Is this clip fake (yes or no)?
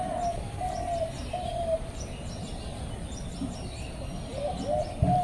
no